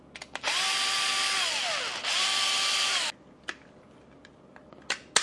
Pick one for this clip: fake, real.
real